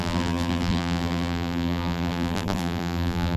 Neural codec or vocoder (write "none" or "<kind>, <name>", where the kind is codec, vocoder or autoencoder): vocoder, BigVGAN v2